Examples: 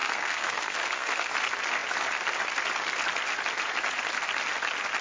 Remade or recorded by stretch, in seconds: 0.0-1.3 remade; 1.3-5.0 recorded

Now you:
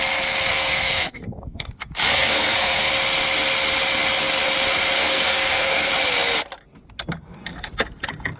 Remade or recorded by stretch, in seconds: 0.0-0.5 recorded; 0.5-1.7 remade; 1.7-2.1 recorded; 2.1-2.9 remade; 2.9-5.0 recorded; 5.0-5.9 remade; 5.9-8.4 recorded